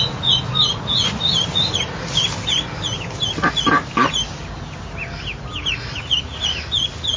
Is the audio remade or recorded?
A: recorded